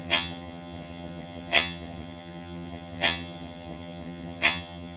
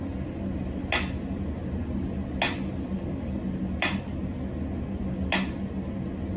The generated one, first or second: first